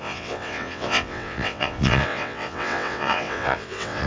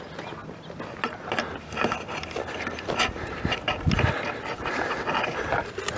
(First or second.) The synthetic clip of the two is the first